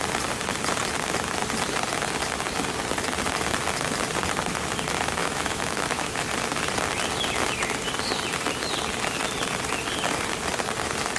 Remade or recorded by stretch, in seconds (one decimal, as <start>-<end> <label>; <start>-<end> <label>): 0.0-5.2 recorded; 5.2-6.2 remade; 6.2-11.2 recorded